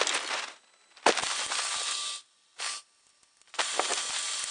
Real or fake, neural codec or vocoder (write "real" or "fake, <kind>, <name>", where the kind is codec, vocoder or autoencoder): real